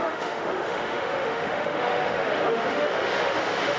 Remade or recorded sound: remade